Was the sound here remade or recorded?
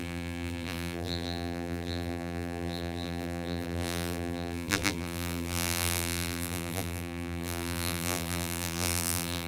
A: remade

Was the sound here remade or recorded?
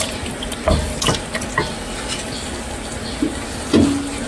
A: recorded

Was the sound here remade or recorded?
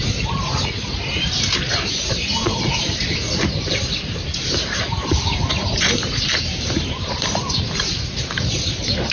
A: remade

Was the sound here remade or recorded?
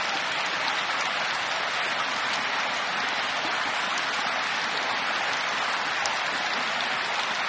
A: recorded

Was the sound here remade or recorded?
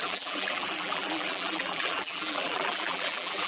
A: remade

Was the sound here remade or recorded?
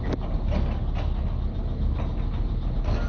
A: recorded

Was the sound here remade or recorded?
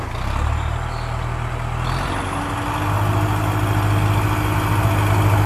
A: recorded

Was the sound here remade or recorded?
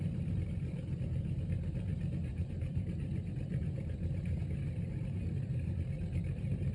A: remade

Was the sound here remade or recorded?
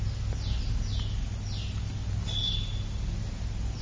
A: recorded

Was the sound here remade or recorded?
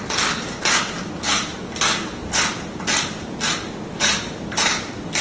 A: recorded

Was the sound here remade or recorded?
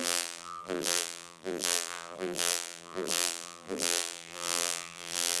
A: remade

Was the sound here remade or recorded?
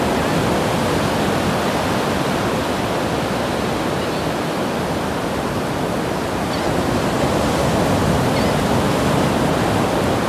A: recorded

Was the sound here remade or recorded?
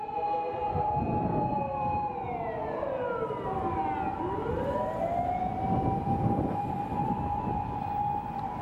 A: recorded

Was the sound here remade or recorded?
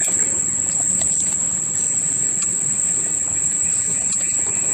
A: recorded